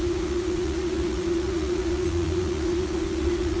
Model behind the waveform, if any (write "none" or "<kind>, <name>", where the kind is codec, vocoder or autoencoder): vocoder, Vocos